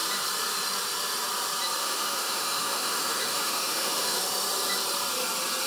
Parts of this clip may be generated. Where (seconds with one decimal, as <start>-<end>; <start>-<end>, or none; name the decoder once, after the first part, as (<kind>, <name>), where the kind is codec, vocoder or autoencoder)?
1.8-4.2 (autoencoder, DAC-VAE)